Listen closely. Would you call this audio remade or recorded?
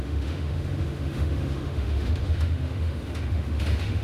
remade